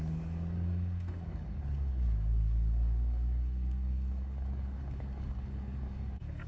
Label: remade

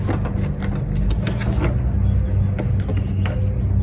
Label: recorded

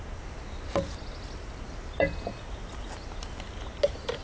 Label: recorded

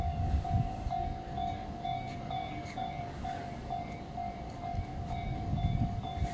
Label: remade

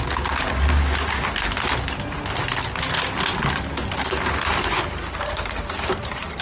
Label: recorded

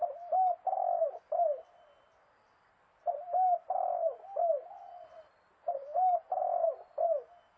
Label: recorded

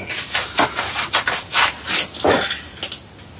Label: recorded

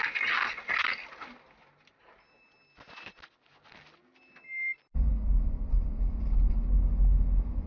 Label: recorded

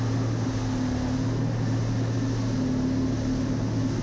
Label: recorded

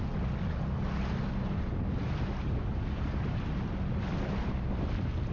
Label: recorded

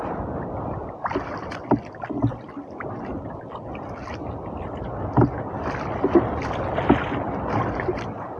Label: recorded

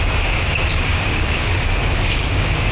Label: remade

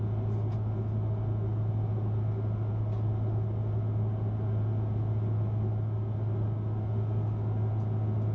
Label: recorded